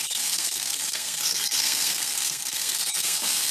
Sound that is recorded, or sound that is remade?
remade